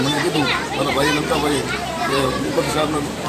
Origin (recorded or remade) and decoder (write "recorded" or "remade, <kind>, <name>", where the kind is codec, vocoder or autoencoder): remade, vocoder, BigVGAN v2